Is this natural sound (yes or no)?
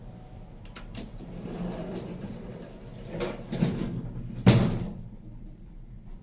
no